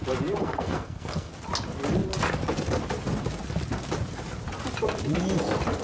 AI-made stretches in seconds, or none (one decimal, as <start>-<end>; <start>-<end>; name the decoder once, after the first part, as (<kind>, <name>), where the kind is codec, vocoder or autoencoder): 0.4-1.3 (codec, SNAC)